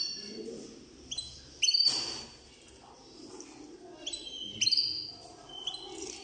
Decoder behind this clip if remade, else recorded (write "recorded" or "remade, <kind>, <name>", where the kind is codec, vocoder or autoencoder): recorded